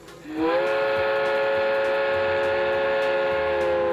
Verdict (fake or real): real